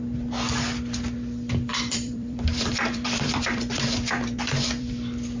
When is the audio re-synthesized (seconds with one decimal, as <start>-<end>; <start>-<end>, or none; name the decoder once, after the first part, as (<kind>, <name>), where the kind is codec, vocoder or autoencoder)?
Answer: 1.7-4.9 (vocoder, BigVGAN v2)